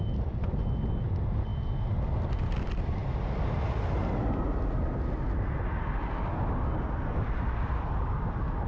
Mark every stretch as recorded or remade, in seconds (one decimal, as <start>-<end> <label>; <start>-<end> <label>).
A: 0.0-8.7 recorded